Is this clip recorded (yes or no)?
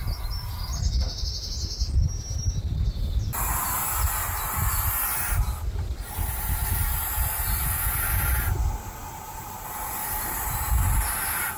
yes